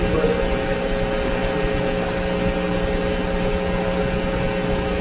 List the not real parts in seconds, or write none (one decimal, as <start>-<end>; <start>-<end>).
none